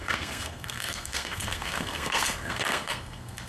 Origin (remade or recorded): remade